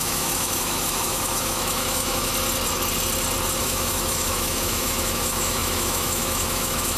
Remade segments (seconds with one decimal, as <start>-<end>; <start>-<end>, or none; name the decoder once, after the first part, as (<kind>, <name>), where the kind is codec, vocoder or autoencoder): 0.0-2.3 (autoencoder, DAC-VAE); 3.6-7.0